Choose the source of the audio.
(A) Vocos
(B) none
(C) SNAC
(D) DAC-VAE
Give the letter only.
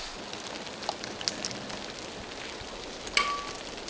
B